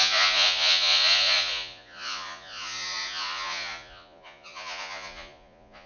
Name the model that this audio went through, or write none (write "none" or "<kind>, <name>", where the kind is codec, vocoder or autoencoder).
vocoder, Vocos